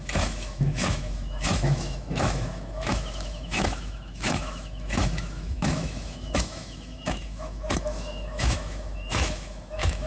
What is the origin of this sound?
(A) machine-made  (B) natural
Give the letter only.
A